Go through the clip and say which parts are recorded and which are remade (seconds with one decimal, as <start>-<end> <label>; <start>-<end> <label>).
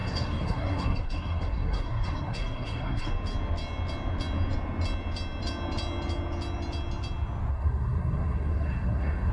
0.0-3.1 remade; 3.1-7.5 recorded; 7.5-9.3 remade